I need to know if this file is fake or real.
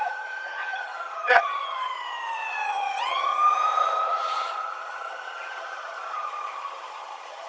fake